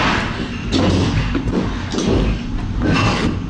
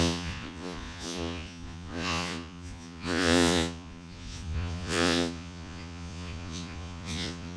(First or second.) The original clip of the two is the first